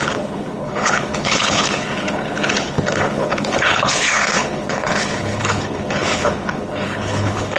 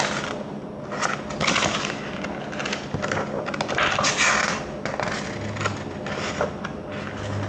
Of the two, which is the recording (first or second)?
second